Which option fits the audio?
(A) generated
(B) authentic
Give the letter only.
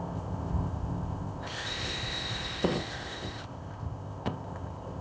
A